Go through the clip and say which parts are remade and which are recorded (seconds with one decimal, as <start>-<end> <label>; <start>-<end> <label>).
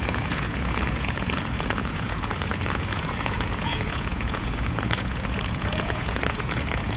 0.0-7.0 remade